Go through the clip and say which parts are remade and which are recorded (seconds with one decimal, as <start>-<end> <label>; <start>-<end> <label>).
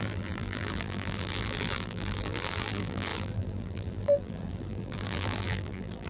0.0-6.1 remade